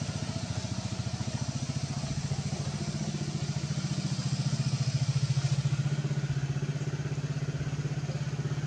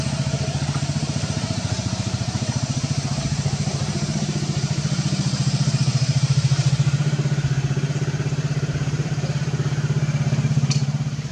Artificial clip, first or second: second